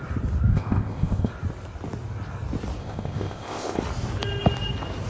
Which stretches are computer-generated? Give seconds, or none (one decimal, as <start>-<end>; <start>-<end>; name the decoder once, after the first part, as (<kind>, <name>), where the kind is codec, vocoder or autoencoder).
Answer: 0.5-1.3 (codec, ZipCodec); 2.8-3.8